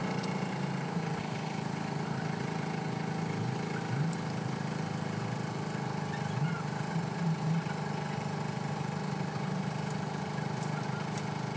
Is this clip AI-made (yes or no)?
no